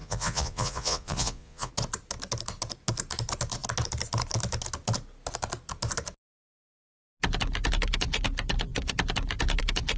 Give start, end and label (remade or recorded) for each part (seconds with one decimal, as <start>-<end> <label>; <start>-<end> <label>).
0.0-1.7 remade; 1.7-10.0 recorded